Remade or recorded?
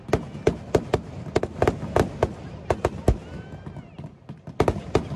recorded